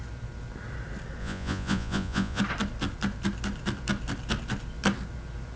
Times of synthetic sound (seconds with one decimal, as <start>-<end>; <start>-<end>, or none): 1.2-2.4